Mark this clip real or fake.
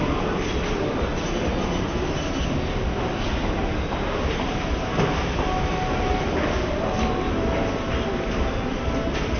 real